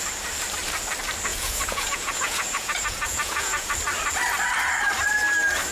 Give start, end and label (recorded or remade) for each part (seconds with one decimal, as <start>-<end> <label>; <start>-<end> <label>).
0.0-1.3 recorded; 1.3-3.7 remade; 3.7-5.7 recorded